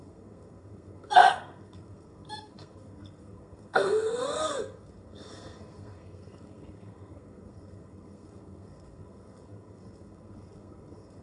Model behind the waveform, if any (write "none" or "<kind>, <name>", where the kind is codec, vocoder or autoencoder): codec, SNAC